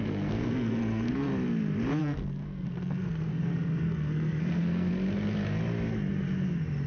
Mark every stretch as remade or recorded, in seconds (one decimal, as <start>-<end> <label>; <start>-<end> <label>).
0.0-1.3 remade; 1.3-2.0 recorded; 2.0-4.9 remade; 4.9-6.9 recorded